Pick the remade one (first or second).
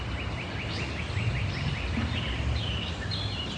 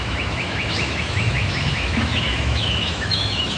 second